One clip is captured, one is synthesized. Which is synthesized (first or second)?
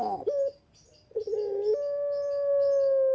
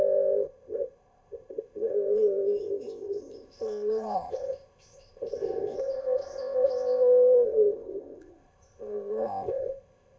second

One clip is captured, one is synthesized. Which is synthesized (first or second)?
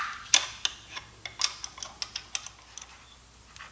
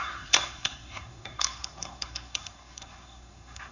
second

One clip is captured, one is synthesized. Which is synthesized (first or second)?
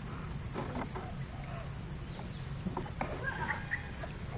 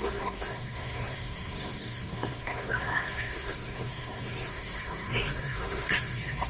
second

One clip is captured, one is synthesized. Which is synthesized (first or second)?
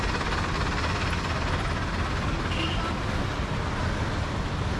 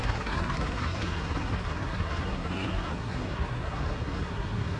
second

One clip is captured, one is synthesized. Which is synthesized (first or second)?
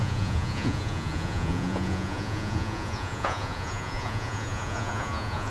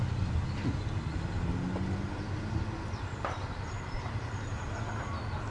first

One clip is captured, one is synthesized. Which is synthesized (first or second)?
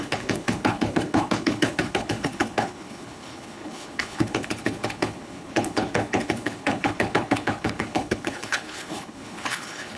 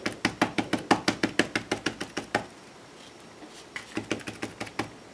first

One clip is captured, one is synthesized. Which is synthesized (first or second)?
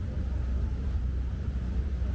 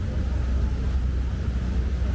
first